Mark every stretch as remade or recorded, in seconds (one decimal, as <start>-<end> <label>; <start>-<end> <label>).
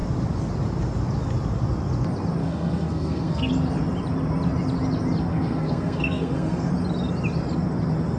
0.0-2.4 recorded; 2.4-3.5 remade; 3.5-5.3 recorded; 5.3-6.7 remade; 6.7-8.2 recorded